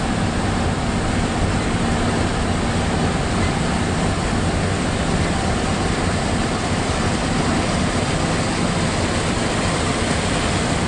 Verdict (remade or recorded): recorded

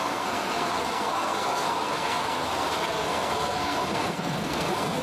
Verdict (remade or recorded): remade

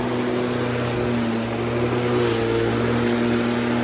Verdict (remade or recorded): recorded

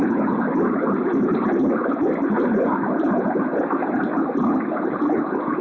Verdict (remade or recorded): recorded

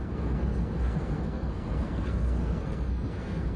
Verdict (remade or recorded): remade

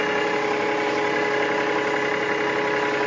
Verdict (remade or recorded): recorded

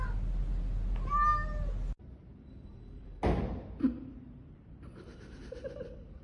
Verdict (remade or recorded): recorded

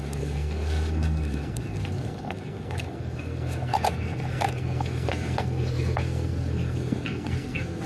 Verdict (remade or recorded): remade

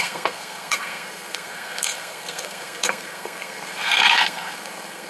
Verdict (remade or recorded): remade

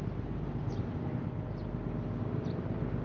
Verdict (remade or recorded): recorded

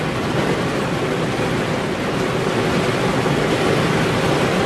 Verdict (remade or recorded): recorded